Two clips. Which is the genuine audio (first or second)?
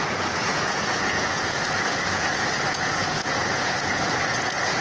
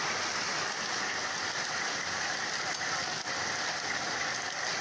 second